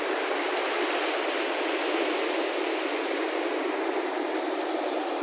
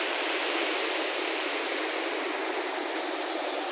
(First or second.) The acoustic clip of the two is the first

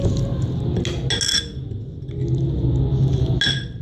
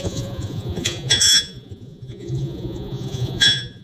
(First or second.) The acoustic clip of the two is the first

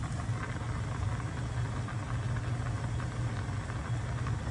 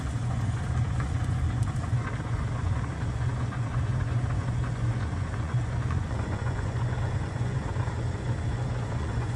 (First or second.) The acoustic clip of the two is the first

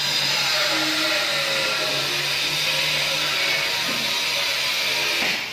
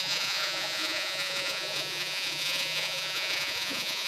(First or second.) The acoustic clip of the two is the first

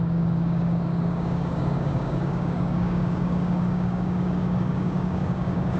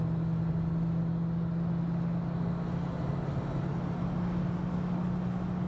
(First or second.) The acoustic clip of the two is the second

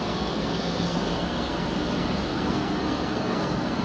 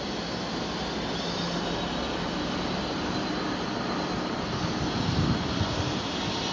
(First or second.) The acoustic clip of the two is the second